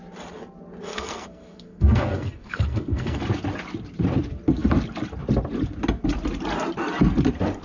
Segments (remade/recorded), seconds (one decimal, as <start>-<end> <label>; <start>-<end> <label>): 0.0-0.9 recorded; 0.9-3.2 remade; 3.2-7.6 recorded